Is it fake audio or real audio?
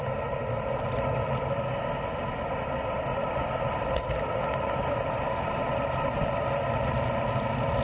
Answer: real